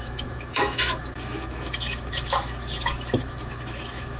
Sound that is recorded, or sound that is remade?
remade